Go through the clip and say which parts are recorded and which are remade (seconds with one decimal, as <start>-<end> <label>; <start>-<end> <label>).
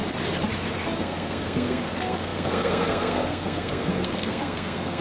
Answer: 0.0-1.0 recorded; 1.0-5.0 remade